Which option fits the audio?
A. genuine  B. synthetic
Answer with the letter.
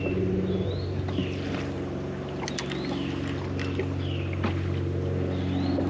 A